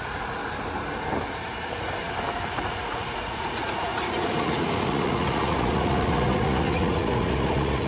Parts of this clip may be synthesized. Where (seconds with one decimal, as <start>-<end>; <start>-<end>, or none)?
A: 0.0-0.4; 2.5-7.9